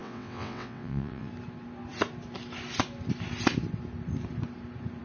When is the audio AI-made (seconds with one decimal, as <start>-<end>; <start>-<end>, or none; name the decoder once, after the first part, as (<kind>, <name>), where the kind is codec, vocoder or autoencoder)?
0.0-1.3 (vocoder, WaveNeXt)